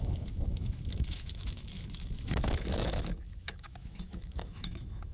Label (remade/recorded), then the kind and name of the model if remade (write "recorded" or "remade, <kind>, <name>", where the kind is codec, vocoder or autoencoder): remade, autoencoder, DAC-VAE